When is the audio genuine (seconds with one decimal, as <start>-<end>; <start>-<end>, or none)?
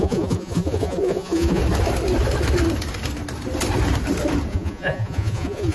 1.6-4.5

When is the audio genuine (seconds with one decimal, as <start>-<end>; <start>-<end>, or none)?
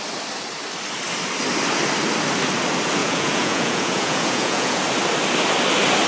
0.0-3.0; 4.8-6.1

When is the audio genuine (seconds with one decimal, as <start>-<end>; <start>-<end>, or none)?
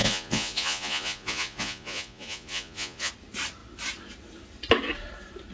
3.1-5.5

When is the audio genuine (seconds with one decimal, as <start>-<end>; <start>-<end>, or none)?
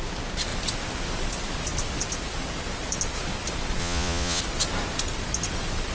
0.0-3.8; 4.4-5.9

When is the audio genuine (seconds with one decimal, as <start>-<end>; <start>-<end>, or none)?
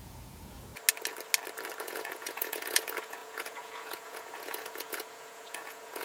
0.7-1.8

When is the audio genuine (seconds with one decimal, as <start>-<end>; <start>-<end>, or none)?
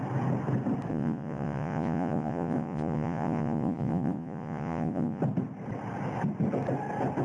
0.0-0.9; 5.2-7.2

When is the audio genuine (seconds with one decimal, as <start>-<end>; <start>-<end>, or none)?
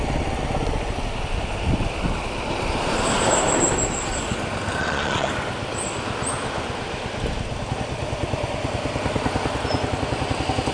0.0-4.8; 5.3-10.7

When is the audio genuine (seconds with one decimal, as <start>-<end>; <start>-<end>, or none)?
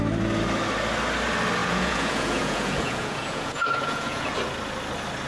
0.0-1.6; 4.3-5.3